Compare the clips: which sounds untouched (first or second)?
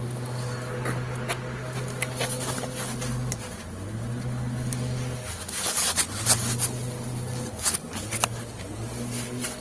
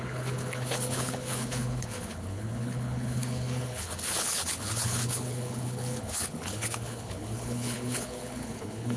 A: first